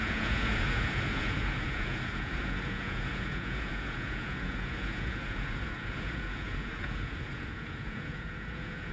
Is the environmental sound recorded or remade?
remade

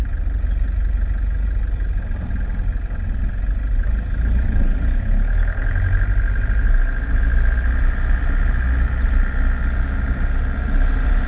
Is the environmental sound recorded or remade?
recorded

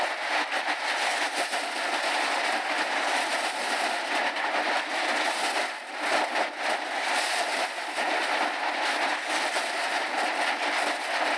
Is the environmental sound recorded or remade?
recorded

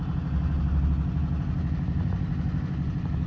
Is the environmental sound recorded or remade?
recorded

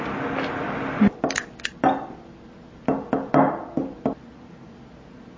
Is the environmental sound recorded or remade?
recorded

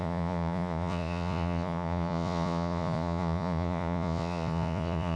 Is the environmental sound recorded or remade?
remade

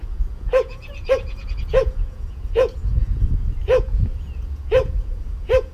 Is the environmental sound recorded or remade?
remade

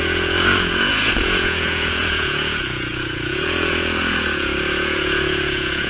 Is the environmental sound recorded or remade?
remade